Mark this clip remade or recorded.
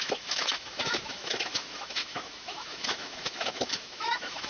remade